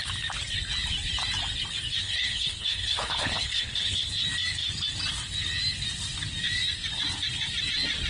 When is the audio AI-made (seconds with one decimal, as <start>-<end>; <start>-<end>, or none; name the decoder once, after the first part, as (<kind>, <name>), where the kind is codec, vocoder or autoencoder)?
2.0-4.1 (codec, HILCodec)